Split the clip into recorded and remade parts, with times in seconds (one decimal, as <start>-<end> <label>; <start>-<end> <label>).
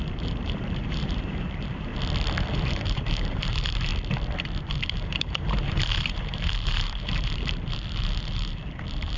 0.0-1.9 remade; 1.9-2.5 recorded; 2.5-3.9 remade; 3.9-4.6 recorded; 4.6-9.2 remade